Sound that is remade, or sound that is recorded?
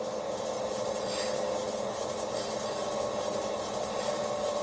recorded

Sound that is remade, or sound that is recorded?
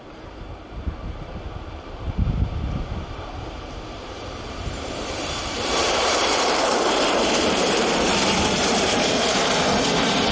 remade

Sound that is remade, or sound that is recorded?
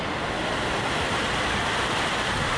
recorded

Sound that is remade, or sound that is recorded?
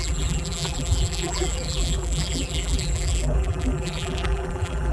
remade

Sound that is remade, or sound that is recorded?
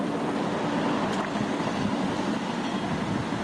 recorded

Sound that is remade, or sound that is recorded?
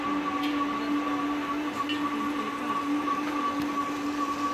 recorded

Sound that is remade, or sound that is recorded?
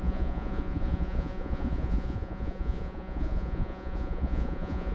remade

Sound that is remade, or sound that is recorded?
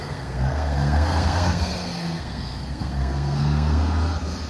remade